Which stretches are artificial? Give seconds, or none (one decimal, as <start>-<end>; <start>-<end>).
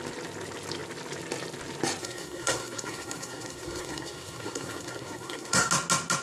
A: 2.0-5.7